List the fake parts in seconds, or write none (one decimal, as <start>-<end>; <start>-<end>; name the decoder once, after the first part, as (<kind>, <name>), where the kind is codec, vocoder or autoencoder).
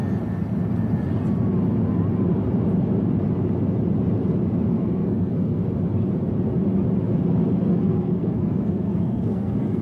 4.7-5.6 (codec, SNAC); 7.7-9.8